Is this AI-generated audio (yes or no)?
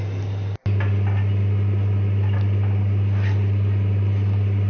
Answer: no